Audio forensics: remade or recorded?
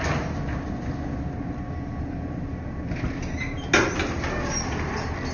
recorded